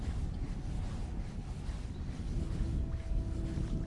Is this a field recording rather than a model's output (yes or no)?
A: yes